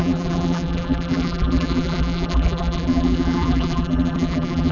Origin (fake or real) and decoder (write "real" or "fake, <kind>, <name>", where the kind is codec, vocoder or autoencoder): fake, vocoder, BigVGAN v2